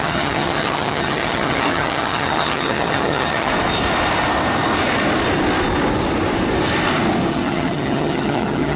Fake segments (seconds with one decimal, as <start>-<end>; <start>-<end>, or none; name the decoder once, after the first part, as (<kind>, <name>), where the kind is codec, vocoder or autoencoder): 0.0-3.5 (vocoder, HiFi-GAN); 7.3-8.8